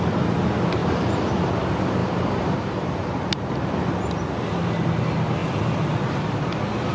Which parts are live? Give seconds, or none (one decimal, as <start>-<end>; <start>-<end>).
0.0-0.8; 1.5-2.0; 3.5-6.9